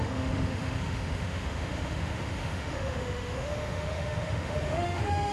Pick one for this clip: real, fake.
fake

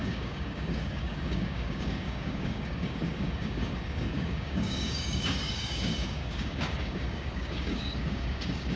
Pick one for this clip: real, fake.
fake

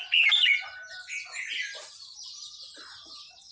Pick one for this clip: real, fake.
real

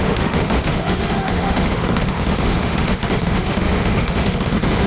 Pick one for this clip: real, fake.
fake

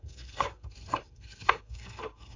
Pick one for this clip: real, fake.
fake